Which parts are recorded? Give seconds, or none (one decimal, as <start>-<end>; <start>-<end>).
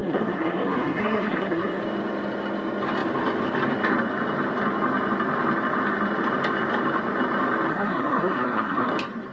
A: 1.8-7.7; 8.9-9.3